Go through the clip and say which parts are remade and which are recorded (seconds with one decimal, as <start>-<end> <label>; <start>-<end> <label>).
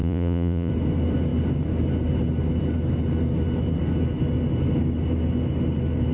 0.0-0.7 remade; 0.7-6.1 recorded